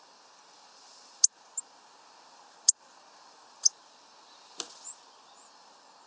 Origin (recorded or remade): recorded